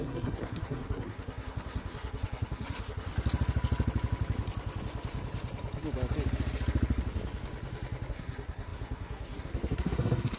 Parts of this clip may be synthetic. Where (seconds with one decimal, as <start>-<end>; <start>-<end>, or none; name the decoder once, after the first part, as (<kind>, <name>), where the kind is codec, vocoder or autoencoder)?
0.0-3.1 (codec, SNAC); 8.1-10.4